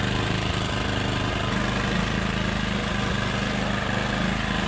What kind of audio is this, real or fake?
real